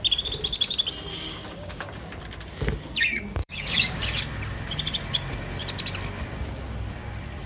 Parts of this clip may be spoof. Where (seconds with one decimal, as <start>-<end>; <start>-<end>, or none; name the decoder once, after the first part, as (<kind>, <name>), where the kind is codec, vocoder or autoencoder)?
1.1-2.0 (codec, DAC); 3.4-4.2